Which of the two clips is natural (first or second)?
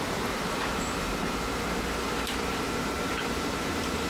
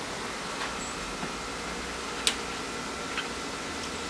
second